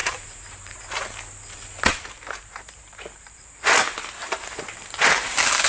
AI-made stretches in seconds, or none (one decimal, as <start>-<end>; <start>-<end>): 0.0-1.0; 1.9-3.4; 4.2-5.7